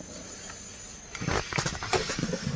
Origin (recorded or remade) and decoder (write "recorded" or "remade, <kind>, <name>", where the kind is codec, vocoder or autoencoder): recorded